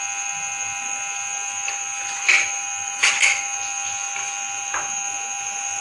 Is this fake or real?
real